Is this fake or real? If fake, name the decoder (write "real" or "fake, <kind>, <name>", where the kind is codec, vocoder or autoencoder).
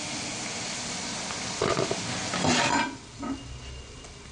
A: real